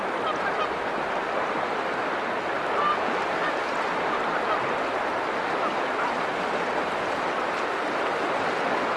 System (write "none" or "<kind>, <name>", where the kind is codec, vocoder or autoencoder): vocoder, BigVGAN v2